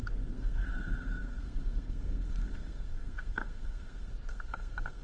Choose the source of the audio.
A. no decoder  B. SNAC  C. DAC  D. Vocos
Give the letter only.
B